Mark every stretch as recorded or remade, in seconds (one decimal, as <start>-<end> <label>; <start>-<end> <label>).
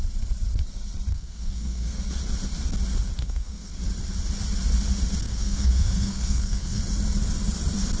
0.0-1.1 recorded; 1.1-2.0 remade; 2.0-3.2 recorded; 3.2-3.7 remade; 3.7-5.2 recorded; 5.2-6.8 remade; 6.8-8.0 recorded